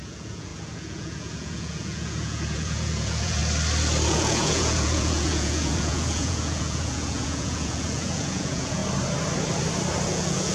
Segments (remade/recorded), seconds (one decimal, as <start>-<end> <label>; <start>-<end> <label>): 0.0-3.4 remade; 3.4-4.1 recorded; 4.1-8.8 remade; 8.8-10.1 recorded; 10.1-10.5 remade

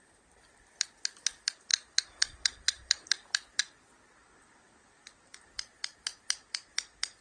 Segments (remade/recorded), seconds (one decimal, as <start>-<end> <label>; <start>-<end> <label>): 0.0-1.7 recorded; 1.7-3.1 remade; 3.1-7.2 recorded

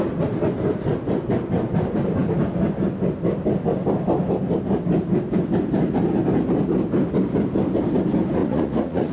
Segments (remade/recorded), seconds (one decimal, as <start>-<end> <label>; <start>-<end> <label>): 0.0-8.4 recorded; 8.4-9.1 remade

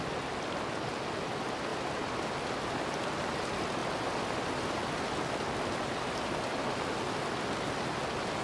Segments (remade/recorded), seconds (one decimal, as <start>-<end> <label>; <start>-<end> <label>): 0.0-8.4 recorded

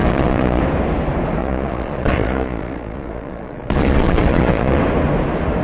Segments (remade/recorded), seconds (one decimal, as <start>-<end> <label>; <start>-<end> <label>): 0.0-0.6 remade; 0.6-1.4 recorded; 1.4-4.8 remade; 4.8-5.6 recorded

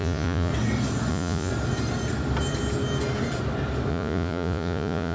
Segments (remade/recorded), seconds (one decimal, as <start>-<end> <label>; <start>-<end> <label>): 0.0-0.5 remade; 0.5-1.1 recorded; 1.1-1.5 remade; 1.5-3.9 recorded; 3.9-5.1 remade

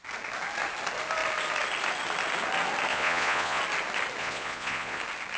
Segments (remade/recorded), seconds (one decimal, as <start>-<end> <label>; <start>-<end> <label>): 0.0-2.9 recorded; 2.9-3.6 remade; 3.6-4.2 recorded; 4.2-5.0 remade; 5.0-5.4 recorded

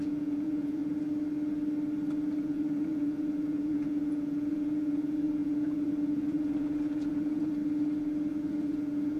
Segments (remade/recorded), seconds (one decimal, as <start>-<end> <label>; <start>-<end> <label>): 0.0-0.8 remade; 0.8-2.4 recorded; 2.4-7.6 remade; 7.6-8.3 recorded; 8.3-9.2 remade